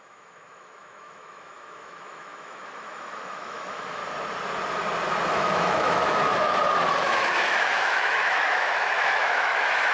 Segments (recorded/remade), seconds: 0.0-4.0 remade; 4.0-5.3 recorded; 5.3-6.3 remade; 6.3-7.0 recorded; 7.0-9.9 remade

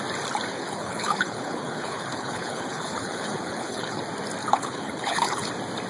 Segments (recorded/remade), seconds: 0.0-0.5 recorded; 0.5-4.0 remade; 4.0-4.4 recorded; 4.4-5.5 remade; 5.5-5.9 recorded

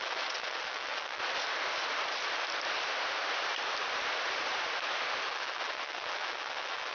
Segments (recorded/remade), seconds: 0.0-1.2 remade; 1.2-5.3 recorded; 5.3-6.9 remade

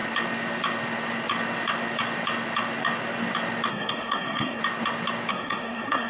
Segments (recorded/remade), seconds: 0.0-3.7 recorded; 3.7-4.6 remade; 4.6-5.3 recorded; 5.3-6.1 remade

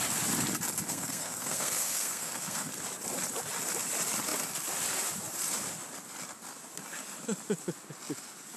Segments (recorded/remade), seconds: 0.0-0.9 recorded; 0.9-2.7 remade; 2.7-8.6 recorded

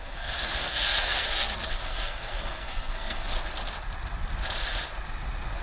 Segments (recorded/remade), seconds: 0.0-3.3 remade; 3.3-5.6 recorded